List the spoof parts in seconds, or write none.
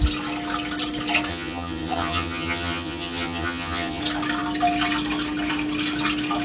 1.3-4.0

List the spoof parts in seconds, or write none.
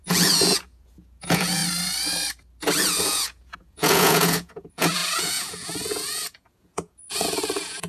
0.0-1.6; 2.8-7.9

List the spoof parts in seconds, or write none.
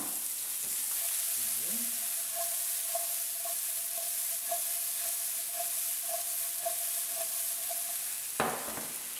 none